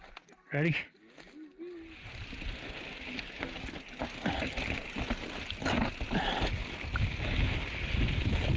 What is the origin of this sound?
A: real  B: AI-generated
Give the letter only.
A